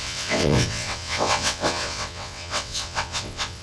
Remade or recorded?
remade